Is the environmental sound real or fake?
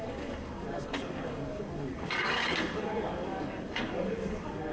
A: fake